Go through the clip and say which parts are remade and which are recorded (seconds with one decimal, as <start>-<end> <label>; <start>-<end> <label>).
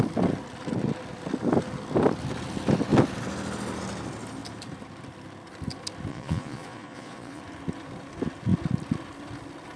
0.0-6.1 recorded; 6.1-7.4 remade; 7.4-9.8 recorded